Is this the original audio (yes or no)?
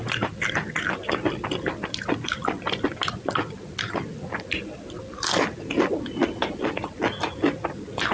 yes